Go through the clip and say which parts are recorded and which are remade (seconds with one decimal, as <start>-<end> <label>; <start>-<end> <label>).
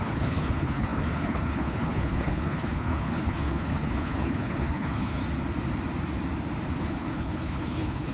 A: 0.0-5.2 remade; 5.2-6.8 recorded; 6.8-8.1 remade